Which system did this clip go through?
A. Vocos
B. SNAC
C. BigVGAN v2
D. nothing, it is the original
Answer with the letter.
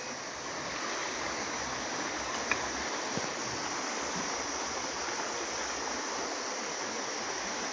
D